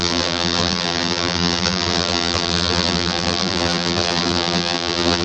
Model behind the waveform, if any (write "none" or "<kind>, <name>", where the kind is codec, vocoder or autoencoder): vocoder, BigVGAN v2